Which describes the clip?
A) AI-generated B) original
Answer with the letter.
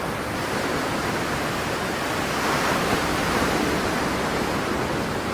B